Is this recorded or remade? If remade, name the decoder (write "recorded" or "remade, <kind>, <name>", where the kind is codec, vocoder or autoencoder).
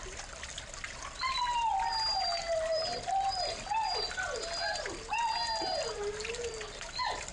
recorded